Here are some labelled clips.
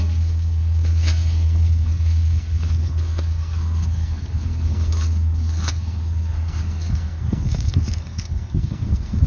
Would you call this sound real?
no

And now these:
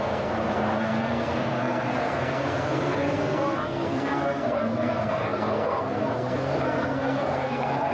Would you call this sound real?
no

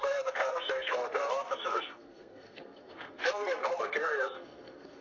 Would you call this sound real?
no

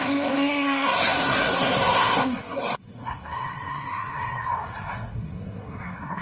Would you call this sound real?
no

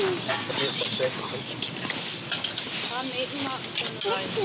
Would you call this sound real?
yes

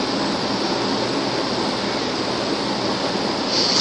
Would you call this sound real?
yes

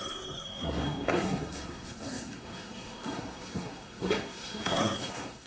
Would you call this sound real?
no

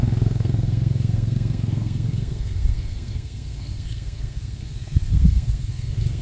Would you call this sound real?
no